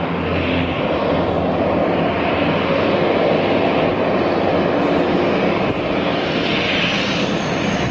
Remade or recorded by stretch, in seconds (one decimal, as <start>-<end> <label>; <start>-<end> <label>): 0.0-7.9 recorded